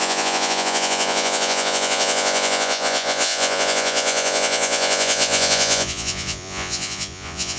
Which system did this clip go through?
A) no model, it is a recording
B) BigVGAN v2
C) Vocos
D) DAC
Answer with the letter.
C